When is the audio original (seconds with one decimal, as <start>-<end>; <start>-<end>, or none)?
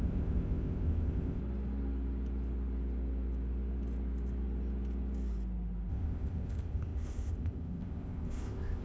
1.4-5.9